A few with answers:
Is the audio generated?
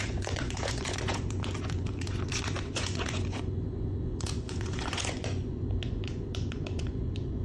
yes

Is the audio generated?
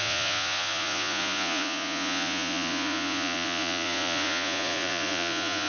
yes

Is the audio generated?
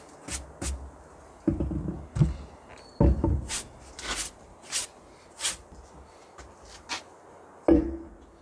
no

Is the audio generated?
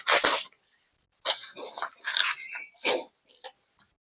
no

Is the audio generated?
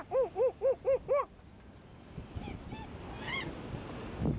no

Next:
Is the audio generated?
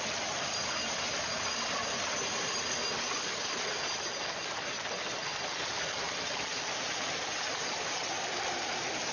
no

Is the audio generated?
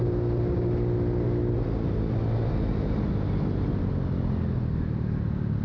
no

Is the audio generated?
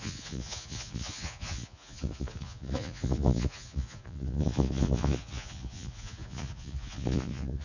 yes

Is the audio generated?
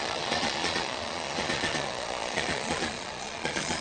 yes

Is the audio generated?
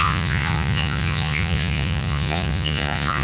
yes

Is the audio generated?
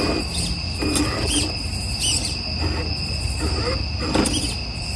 no